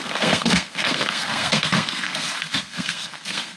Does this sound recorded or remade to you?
remade